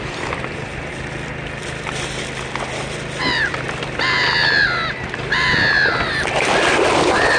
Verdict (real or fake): real